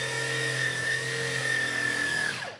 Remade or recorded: remade